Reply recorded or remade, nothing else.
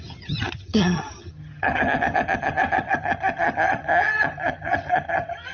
remade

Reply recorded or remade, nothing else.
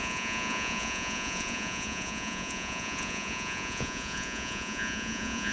remade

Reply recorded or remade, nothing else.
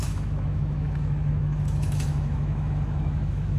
remade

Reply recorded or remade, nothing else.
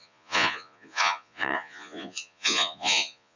remade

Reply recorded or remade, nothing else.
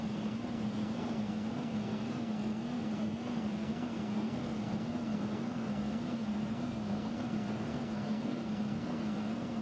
remade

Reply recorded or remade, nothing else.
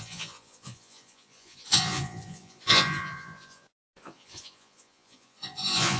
remade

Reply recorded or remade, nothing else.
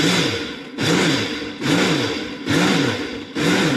recorded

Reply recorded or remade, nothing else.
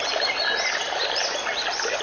recorded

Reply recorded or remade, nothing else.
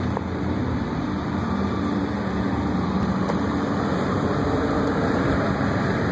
remade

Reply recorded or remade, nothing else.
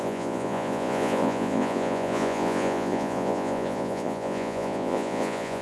remade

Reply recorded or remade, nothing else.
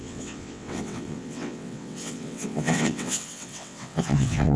remade